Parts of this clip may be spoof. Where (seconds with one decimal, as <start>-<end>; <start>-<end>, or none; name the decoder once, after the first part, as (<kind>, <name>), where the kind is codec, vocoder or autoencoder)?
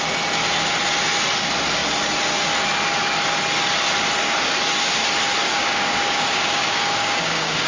5.5-7.7 (codec, DAC)